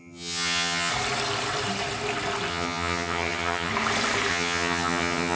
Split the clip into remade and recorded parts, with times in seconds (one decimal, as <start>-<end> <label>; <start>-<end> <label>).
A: 0.0-0.9 remade; 0.9-2.5 recorded; 2.5-3.7 remade; 3.7-4.3 recorded; 4.3-5.4 remade